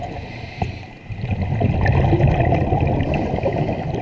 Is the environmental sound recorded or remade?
recorded